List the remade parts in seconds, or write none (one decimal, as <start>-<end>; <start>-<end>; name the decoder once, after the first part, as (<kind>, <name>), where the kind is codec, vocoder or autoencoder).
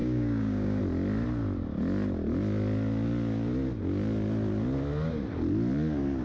0.0-0.8 (codec, DAC)